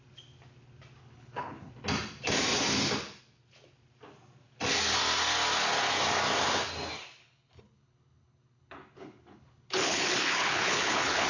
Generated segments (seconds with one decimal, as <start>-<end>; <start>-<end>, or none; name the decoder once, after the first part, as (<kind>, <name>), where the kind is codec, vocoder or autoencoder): 1.0-1.7 (codec, HILCodec); 7.2-11.3